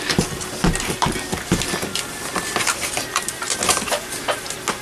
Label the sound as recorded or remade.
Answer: recorded